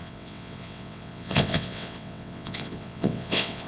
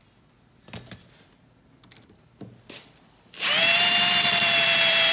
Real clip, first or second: second